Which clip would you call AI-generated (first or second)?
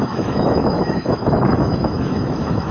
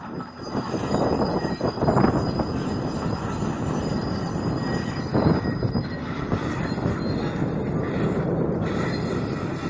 first